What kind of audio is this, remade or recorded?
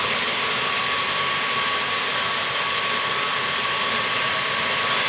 recorded